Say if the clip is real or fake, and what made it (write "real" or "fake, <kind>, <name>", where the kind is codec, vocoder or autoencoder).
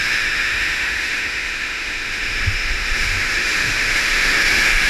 fake, autoencoder, DAC-VAE